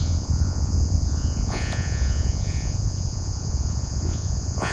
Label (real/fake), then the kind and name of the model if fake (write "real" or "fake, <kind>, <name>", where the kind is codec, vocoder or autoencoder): fake, vocoder, Vocos